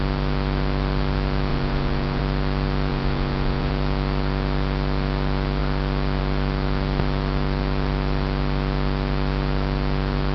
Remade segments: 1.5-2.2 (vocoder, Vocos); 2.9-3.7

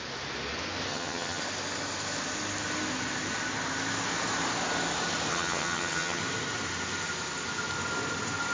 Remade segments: 0.9-1.4 (vocoder, HiFi-GAN); 5.3-6.2

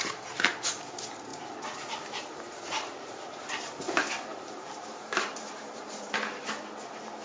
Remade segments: 1.3-3.8 (vocoder, BigVGAN v2); 4.3-6.1

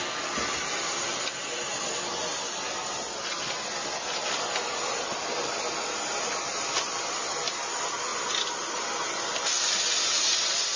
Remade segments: none

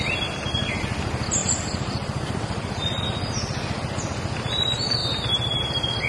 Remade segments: 1.4-3.0 (vocoder, BigVGAN v2); 5.0-5.6

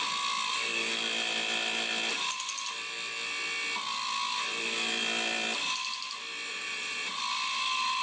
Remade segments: 6.5-7.2 (vocoder, Vocos)

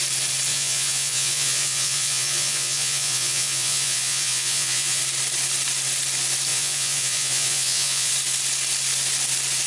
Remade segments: 0.5-5.0 (vocoder, Vocos); 6.5-8.1